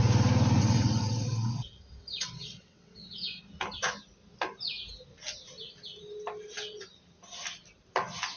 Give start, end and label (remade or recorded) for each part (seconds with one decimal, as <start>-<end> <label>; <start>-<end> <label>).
0.0-0.6 recorded; 0.6-3.4 remade; 3.4-8.4 recorded